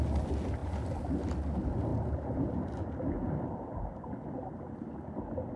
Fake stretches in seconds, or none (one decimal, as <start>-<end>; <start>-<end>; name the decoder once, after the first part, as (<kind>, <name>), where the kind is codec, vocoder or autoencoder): none